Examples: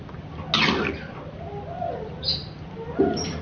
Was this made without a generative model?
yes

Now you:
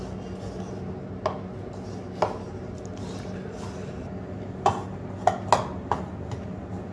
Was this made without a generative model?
yes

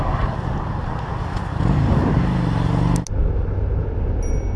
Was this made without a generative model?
yes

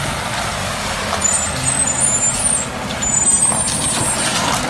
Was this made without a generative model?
yes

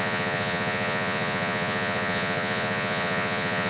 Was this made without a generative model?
no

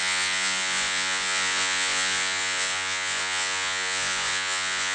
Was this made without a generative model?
no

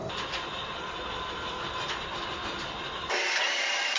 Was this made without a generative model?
yes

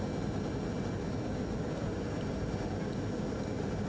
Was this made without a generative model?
yes